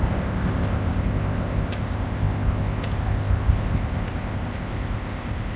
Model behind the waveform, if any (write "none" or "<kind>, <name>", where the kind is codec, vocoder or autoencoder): codec, ZipCodec